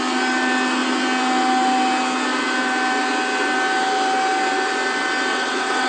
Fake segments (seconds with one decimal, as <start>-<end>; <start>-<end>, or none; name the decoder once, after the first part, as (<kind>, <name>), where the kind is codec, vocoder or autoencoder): 5.3-5.9 (vocoder, WaveNeXt)